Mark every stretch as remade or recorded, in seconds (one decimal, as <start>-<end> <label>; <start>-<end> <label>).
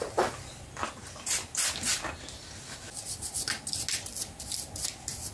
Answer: 0.0-5.3 recorded